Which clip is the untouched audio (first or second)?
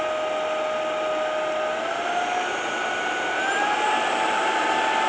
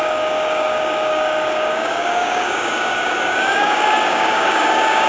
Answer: first